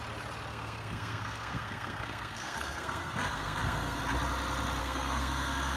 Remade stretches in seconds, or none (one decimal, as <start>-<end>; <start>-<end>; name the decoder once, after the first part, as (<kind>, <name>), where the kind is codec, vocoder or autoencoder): 0.5-4.0 (codec, SNAC); 4.8-5.8